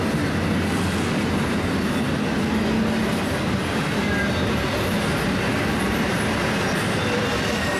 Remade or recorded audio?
recorded